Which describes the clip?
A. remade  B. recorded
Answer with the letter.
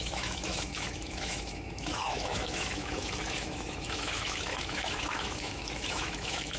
A